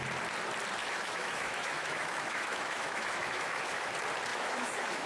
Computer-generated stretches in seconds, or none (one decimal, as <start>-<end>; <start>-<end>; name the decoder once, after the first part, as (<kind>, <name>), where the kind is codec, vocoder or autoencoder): 0.8-3.9 (autoencoder, DAC-VAE); 4.3-5.1